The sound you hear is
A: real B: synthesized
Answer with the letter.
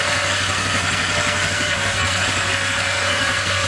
B